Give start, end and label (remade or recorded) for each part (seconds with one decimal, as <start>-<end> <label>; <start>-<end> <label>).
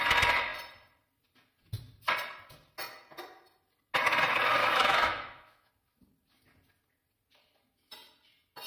0.0-4.6 recorded; 4.6-5.7 remade; 5.7-8.7 recorded